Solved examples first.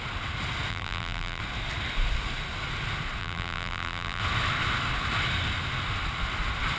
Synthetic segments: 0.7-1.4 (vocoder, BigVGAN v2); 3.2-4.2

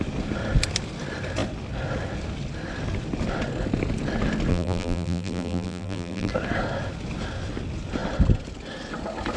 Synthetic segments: 4.5-6.3 (vocoder, BigVGAN v2)

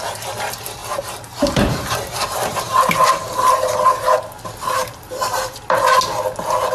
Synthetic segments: 0.8-4.2 (vocoder, BigVGAN v2); 4.8-5.6